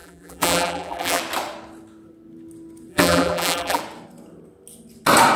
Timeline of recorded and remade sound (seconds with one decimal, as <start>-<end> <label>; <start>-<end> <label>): 0.0-1.2 remade; 1.2-2.9 recorded; 2.9-3.8 remade; 3.8-5.4 recorded